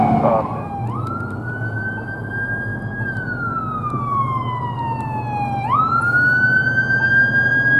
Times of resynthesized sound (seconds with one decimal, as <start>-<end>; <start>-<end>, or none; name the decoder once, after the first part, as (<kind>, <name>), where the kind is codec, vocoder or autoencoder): none